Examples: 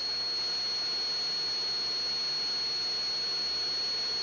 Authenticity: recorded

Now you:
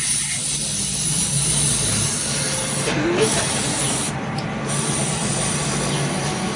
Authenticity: recorded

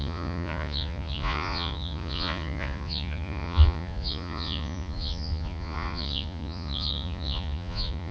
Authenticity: remade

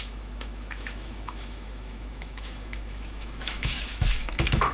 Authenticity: remade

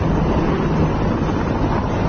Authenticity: recorded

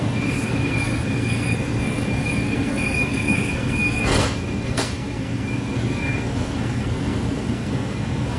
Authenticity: remade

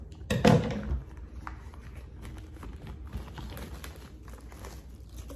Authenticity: recorded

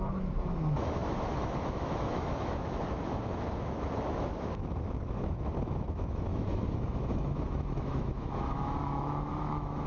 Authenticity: remade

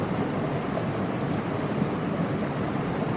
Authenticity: recorded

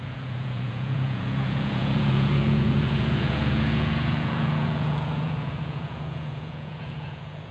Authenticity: remade